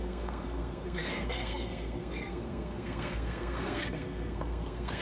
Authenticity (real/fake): fake